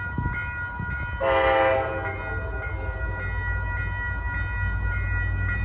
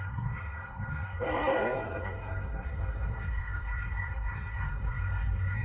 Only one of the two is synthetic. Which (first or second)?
second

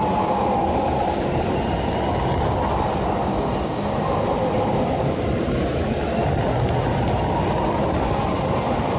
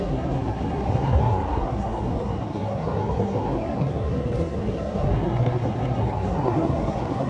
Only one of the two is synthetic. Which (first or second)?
second